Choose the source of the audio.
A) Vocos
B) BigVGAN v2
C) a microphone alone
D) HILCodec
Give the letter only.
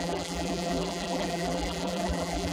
B